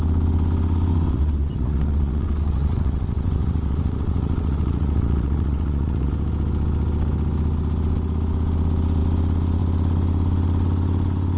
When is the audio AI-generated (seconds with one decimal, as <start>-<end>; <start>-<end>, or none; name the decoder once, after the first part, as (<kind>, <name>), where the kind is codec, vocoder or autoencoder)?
0.9-6.1 (vocoder, WaveNeXt)